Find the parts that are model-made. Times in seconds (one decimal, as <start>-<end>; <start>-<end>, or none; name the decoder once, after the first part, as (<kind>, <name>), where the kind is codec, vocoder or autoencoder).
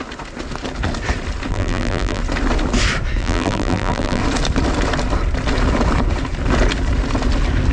1.5-2.2 (vocoder, BigVGAN v2); 3.2-4.2